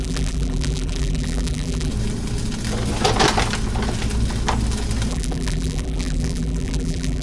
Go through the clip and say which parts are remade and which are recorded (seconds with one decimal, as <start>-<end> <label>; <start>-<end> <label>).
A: 0.0-1.9 remade; 1.9-5.1 recorded; 5.1-7.2 remade